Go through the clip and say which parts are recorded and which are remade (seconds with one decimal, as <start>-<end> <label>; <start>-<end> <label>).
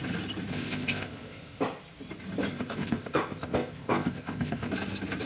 0.0-0.5 recorded; 0.5-1.6 remade; 1.6-2.5 recorded; 2.5-4.7 remade; 4.7-5.3 recorded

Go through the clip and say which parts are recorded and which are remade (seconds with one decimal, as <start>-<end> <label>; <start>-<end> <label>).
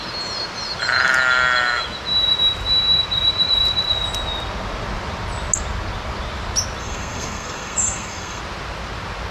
0.0-6.8 recorded; 6.8-8.4 remade; 8.4-9.3 recorded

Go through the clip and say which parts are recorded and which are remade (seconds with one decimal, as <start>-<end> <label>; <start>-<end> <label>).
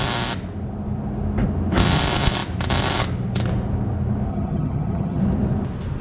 0.0-4.3 recorded; 4.3-5.2 remade; 5.2-6.0 recorded